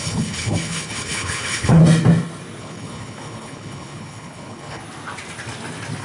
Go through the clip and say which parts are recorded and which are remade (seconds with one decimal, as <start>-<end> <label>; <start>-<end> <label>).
0.0-1.8 remade; 1.8-2.6 recorded; 2.6-4.8 remade; 4.8-6.0 recorded